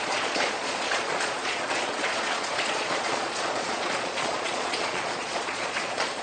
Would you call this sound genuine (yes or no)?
no